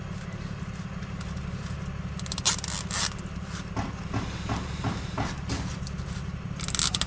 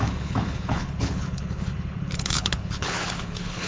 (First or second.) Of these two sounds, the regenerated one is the second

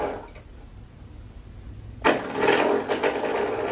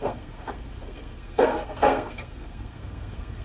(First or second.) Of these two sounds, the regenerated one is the second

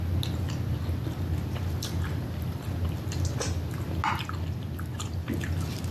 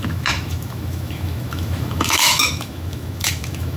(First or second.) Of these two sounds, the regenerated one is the second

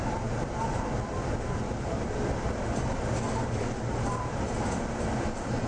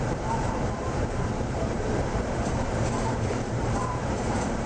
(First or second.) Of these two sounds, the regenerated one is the second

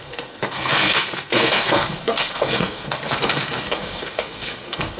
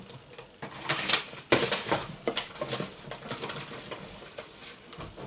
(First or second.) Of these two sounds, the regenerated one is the first